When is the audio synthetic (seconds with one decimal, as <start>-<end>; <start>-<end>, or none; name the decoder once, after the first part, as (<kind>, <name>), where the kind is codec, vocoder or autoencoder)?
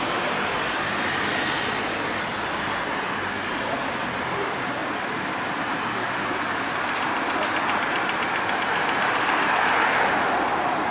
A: none